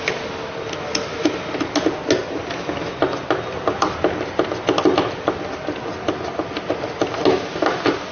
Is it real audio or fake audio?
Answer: real